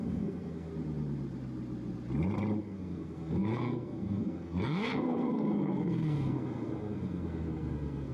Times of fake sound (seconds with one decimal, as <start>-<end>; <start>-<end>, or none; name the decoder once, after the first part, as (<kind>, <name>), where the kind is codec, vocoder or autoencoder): 0.0-0.7 (codec, SNAC); 2.6-8.1